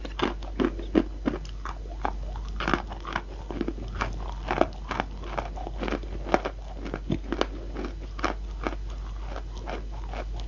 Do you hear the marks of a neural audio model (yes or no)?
no